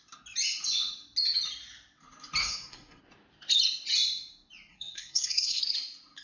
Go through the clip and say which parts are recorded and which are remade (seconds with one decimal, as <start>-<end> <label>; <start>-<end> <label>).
0.0-2.4 recorded; 2.4-3.0 remade; 3.0-4.7 recorded; 4.7-5.6 remade; 5.6-6.2 recorded